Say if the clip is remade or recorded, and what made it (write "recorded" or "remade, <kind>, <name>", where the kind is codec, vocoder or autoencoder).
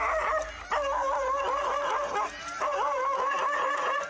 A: recorded